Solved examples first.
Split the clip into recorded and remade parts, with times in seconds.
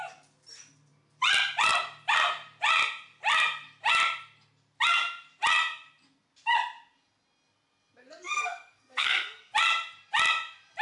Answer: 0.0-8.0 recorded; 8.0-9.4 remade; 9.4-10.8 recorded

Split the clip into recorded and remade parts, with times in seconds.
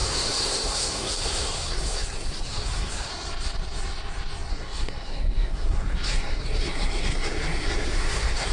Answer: 0.0-3.1 remade; 3.1-4.5 recorded; 4.5-8.5 remade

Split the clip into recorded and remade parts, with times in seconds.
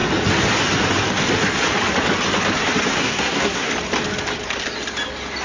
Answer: 0.0-3.0 recorded; 3.0-3.7 remade; 3.7-5.4 recorded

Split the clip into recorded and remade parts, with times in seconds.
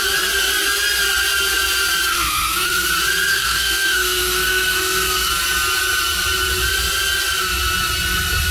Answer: 0.0-2.1 recorded; 2.1-2.9 remade; 2.9-3.3 recorded; 3.3-5.3 remade; 5.3-8.5 recorded